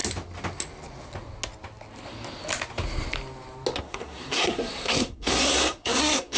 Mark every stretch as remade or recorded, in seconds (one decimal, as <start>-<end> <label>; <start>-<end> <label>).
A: 0.0-3.8 recorded; 3.8-6.4 remade